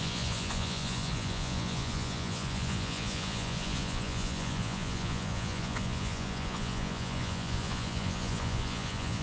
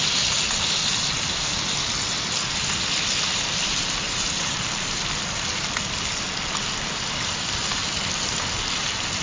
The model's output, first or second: first